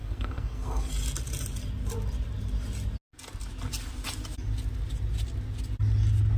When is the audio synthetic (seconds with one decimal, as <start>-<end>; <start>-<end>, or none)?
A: 0.0-0.9